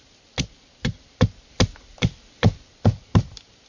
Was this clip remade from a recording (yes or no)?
no